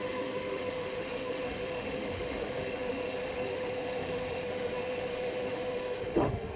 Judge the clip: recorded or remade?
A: remade